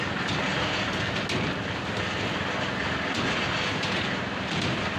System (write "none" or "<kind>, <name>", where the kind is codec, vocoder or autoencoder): none